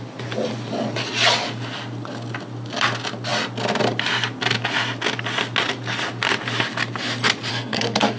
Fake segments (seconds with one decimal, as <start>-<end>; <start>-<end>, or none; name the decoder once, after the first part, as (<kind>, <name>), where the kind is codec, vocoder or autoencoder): 7.5-8.2 (codec, SNAC)